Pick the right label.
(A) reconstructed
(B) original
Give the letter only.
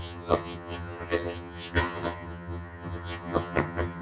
A